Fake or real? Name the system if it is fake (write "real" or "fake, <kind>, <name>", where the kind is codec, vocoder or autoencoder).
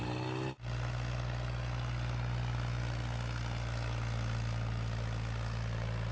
real